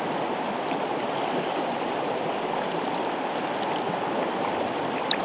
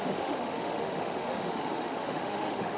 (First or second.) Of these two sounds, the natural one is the first